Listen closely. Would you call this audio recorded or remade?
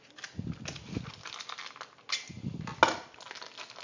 recorded